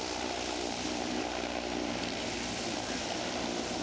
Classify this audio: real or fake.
fake